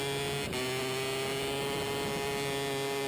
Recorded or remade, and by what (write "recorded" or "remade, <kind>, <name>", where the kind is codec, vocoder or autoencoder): recorded